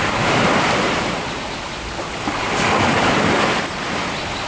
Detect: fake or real real